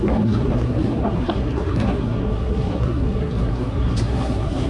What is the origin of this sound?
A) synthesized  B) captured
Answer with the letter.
A